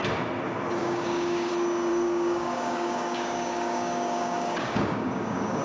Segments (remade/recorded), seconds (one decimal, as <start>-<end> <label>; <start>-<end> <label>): 0.0-0.8 recorded; 0.8-1.5 remade; 1.5-1.9 recorded; 1.9-5.6 remade